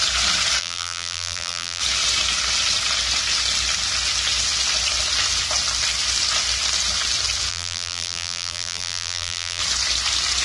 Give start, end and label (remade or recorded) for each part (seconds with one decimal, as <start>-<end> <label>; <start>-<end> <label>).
0.0-0.6 recorded; 0.6-1.8 remade; 1.8-7.5 recorded; 7.5-9.6 remade; 9.6-10.4 recorded